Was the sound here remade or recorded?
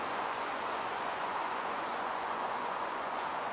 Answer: remade